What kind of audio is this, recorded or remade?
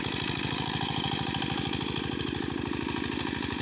recorded